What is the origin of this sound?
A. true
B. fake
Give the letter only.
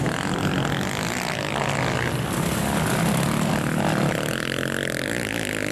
A